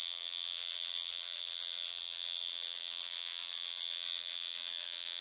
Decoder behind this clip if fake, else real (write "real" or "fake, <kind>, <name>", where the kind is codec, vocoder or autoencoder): fake, vocoder, BigVGAN v2